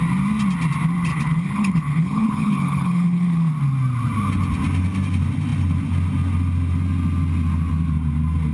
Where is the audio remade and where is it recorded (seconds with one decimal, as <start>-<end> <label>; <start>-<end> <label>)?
0.0-1.1 recorded; 1.1-3.5 remade; 3.5-8.5 recorded